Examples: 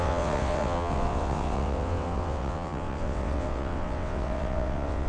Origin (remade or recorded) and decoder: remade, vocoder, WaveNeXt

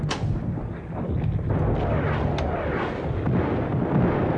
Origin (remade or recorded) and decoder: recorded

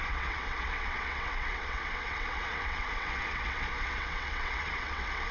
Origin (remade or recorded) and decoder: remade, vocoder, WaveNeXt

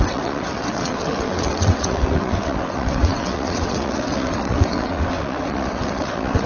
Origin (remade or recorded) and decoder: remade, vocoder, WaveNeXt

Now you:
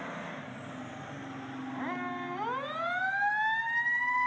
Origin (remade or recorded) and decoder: recorded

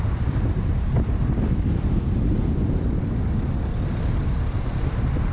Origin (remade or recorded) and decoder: recorded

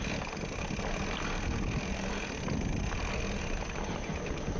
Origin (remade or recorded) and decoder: recorded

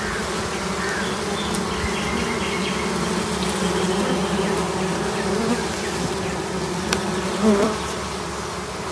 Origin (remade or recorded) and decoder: recorded